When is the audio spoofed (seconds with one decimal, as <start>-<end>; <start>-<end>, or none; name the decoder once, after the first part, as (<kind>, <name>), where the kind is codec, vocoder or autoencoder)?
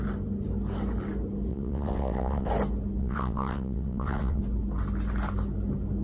1.5-2.5 (vocoder, WaveNeXt); 3.0-4.4